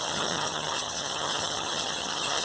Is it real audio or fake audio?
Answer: fake